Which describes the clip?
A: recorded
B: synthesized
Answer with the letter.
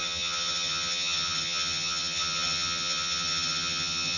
B